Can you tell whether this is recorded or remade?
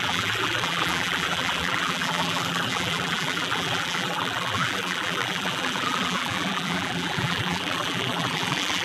remade